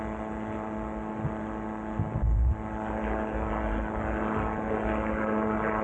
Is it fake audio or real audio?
real